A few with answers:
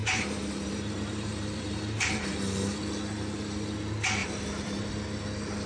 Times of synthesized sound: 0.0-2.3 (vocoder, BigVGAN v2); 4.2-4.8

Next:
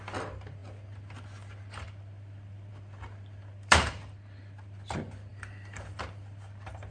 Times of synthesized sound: 0.0-6.9 (vocoder, BigVGAN v2)

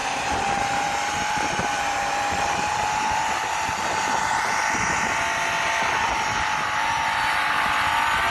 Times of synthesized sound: 0.0-5.0 (vocoder, BigVGAN v2)

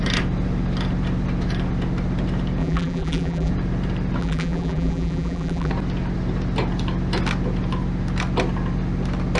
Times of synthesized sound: 2.6-3.5 (vocoder, BigVGAN v2); 4.2-5.7